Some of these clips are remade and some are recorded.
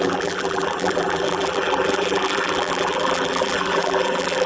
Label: remade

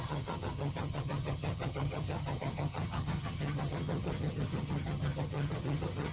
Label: remade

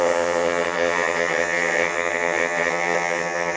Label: remade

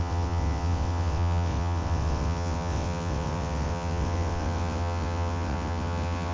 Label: remade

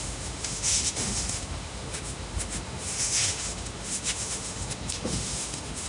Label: remade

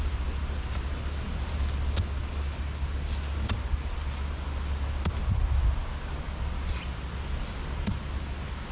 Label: recorded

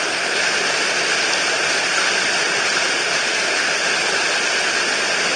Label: recorded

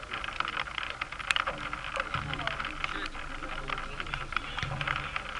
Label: recorded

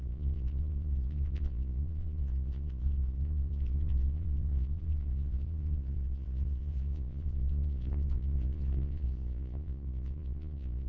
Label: remade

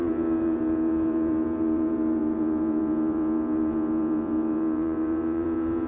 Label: remade